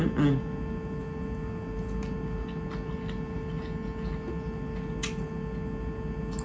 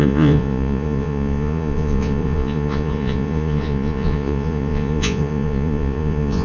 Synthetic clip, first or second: second